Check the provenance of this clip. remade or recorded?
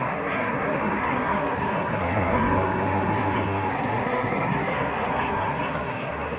remade